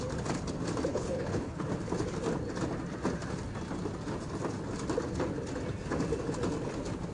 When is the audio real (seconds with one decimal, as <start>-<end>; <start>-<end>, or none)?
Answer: 0.0-0.9; 1.7-7.1